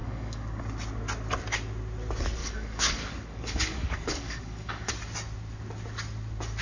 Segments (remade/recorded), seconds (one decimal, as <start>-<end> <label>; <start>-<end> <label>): 0.0-0.6 remade; 0.6-2.4 recorded; 2.4-4.9 remade; 4.9-6.6 recorded